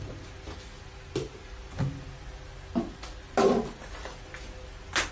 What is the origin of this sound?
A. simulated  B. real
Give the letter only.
B